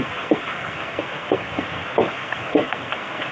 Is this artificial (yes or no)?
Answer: yes